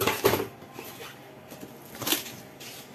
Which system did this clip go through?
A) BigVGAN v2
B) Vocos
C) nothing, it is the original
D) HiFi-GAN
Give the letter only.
C